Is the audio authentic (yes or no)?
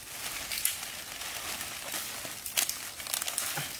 yes